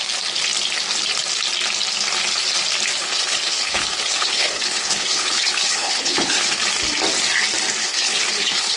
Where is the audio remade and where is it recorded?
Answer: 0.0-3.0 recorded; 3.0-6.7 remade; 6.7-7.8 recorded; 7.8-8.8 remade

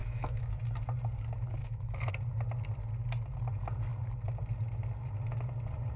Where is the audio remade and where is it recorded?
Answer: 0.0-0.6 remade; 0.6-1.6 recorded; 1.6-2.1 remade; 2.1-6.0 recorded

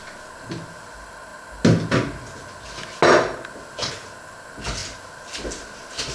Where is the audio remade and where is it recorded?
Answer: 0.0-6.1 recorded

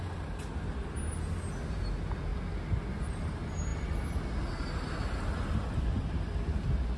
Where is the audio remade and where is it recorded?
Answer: 0.0-7.0 recorded

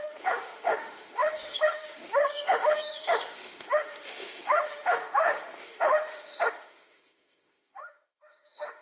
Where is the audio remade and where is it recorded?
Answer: 0.0-8.8 remade

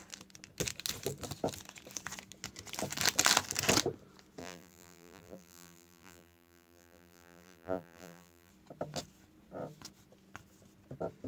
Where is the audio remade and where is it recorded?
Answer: 0.0-4.4 recorded; 4.4-8.5 remade; 8.5-11.3 recorded

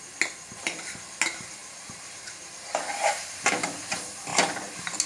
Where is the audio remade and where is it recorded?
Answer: 0.0-1.6 recorded; 1.6-3.5 remade; 3.5-5.1 recorded